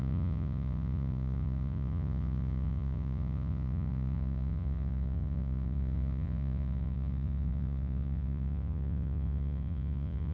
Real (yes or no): no